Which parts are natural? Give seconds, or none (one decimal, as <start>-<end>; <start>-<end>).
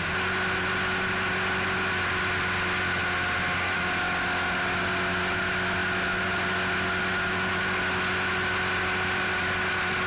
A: 0.0-10.1